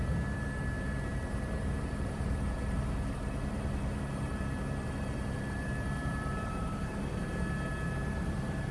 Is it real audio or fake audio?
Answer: fake